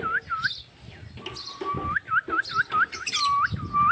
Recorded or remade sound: recorded